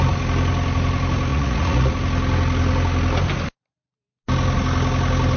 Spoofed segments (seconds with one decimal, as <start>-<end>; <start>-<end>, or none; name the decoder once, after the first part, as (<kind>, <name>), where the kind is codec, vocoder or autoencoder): 1.3-1.9 (vocoder, Vocos)